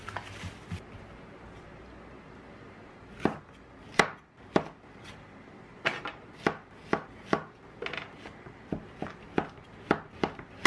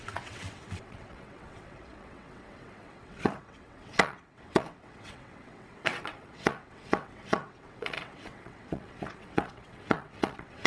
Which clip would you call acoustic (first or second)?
first